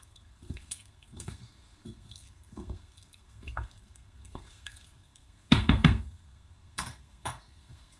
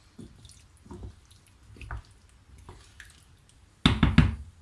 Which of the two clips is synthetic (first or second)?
first